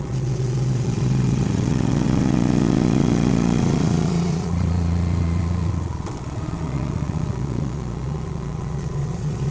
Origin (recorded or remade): remade